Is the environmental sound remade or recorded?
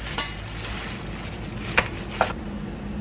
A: recorded